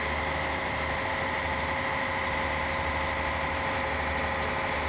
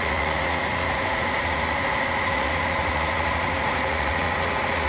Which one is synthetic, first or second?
second